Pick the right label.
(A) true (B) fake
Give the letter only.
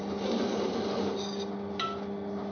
A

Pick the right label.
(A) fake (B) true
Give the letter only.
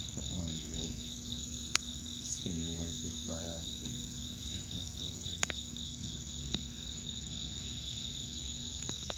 A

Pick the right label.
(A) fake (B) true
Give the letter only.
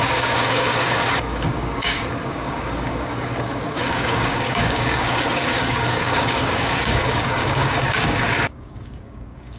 A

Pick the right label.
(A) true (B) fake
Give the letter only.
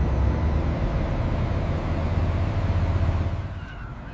A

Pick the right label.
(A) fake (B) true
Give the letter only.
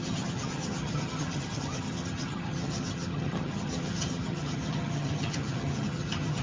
A